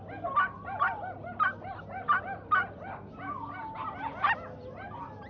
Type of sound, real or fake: real